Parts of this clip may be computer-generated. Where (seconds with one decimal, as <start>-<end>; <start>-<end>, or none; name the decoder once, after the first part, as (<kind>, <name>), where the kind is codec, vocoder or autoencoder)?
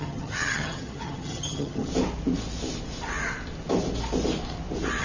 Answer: 0.0-1.9 (vocoder, HiFi-GAN)